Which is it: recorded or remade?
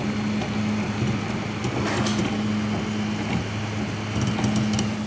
recorded